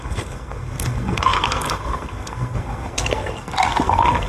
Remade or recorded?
remade